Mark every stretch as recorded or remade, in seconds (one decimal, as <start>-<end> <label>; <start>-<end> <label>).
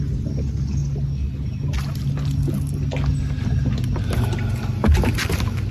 0.0-5.7 recorded